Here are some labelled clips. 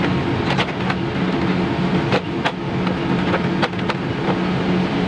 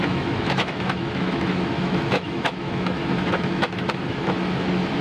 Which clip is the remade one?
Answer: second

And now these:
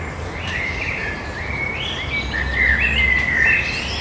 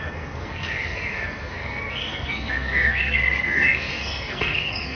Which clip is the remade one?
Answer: second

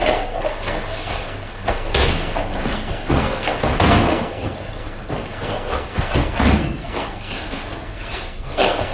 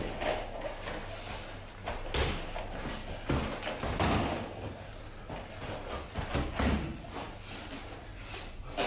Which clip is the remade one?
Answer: first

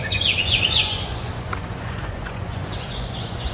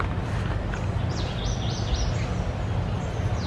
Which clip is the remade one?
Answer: first